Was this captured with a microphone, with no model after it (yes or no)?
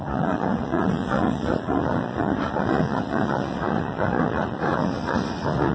no